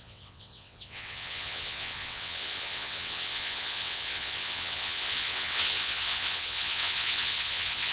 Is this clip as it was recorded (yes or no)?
no